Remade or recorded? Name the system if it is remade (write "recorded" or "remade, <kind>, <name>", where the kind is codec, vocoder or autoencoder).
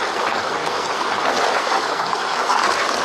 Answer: remade, codec, SNAC